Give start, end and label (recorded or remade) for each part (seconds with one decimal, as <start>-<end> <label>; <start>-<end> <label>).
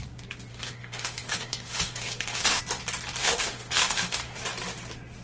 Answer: 0.0-0.5 recorded; 0.5-2.6 remade; 2.6-3.2 recorded; 3.2-4.4 remade; 4.4-5.2 recorded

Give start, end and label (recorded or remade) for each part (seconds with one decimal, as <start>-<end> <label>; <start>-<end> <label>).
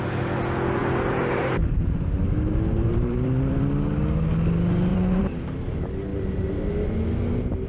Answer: 0.0-0.8 recorded; 0.8-3.6 remade; 3.6-4.9 recorded; 4.9-5.6 remade; 5.6-7.7 recorded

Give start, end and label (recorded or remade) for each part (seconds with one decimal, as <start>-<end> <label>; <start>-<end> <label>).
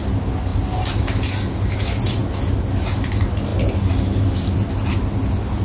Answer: 0.0-5.6 recorded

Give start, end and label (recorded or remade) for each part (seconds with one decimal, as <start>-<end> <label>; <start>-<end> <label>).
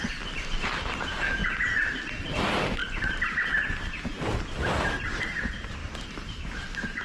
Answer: 0.0-7.0 recorded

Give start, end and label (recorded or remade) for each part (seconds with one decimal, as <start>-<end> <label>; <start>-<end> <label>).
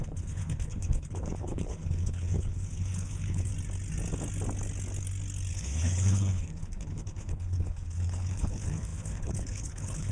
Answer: 0.0-3.5 remade; 3.5-5.5 recorded; 5.5-10.1 remade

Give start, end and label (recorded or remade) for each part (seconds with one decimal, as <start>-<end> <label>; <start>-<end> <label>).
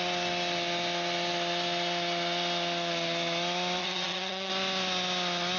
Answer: 0.0-3.8 recorded; 3.8-4.5 remade; 4.5-5.6 recorded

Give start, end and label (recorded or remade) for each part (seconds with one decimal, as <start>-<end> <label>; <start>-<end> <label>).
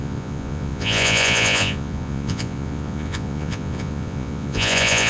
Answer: 0.0-5.1 remade